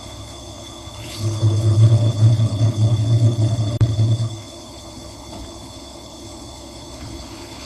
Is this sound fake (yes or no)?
yes